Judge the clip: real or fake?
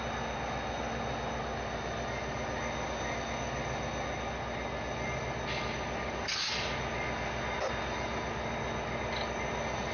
real